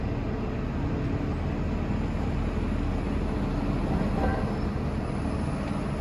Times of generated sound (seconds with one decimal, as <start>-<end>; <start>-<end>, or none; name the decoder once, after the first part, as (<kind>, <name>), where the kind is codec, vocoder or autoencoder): none